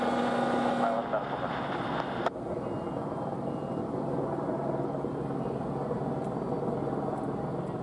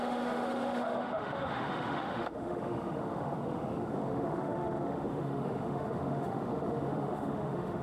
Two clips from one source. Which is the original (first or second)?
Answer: first